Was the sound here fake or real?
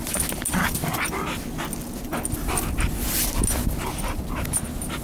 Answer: real